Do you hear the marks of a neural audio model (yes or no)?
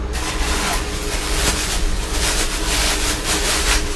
yes